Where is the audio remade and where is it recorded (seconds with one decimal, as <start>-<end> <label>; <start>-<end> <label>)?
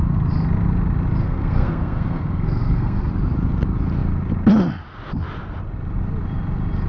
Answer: 0.0-1.2 recorded; 1.2-3.1 remade; 3.1-6.9 recorded